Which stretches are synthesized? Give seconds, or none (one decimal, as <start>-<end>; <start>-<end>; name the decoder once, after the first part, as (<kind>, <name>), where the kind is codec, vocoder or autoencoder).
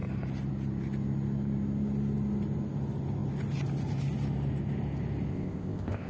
5.3-6.1 (codec, ZipCodec)